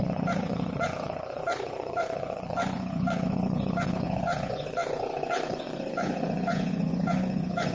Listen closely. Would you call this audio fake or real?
fake